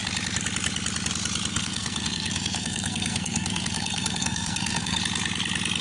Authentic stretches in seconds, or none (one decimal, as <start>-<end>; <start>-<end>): 0.0-1.5; 5.0-5.8